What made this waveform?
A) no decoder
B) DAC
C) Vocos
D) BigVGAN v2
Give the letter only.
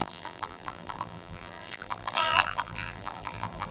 D